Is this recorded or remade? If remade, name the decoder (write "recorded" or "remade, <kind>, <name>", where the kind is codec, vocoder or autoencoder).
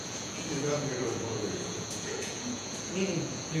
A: remade, vocoder, Vocos